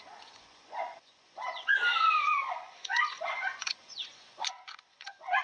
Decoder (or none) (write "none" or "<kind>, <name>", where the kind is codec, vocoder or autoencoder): vocoder, Vocos